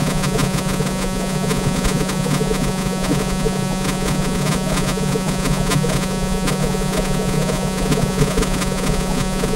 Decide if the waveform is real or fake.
fake